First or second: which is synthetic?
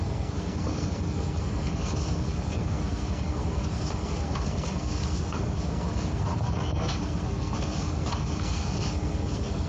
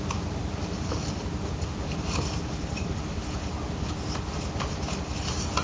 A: first